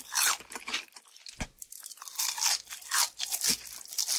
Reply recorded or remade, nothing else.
recorded